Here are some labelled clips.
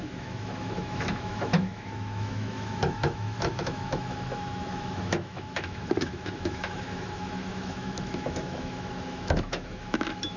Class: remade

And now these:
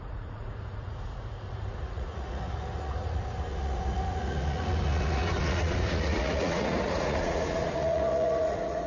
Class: remade